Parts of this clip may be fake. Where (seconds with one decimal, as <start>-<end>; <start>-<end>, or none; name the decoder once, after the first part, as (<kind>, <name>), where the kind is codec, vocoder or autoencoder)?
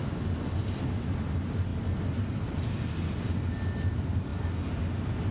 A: none